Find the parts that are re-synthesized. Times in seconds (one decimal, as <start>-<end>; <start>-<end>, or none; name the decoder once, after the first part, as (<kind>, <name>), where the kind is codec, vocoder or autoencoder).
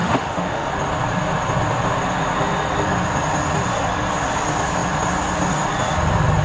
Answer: 0.0-0.7 (autoencoder, DAC-VAE)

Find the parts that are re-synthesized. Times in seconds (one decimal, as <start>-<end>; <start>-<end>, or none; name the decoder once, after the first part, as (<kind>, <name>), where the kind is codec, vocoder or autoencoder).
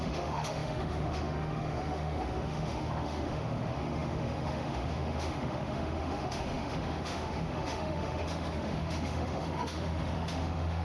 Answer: 0.0-10.8 (autoencoder, DAC-VAE)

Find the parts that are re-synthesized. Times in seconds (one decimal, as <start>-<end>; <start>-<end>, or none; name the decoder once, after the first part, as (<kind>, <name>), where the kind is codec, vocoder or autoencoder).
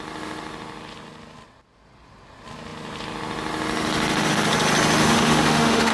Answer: 5.0-5.9 (autoencoder, DAC-VAE)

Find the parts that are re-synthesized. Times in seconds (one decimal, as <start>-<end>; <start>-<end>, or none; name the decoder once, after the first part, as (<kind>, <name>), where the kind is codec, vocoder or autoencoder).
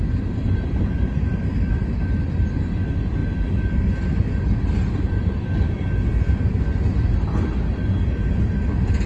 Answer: none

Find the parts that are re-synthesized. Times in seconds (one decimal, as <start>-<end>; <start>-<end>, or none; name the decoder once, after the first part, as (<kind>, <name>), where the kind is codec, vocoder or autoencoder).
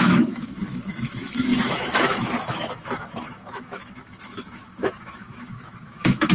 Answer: 0.0-6.3 (autoencoder, DAC-VAE)